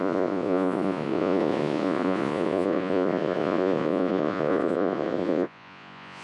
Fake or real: fake